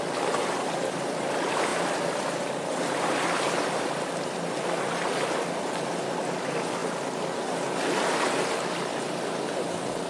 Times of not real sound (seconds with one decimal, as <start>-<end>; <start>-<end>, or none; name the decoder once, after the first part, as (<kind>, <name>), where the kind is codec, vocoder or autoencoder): none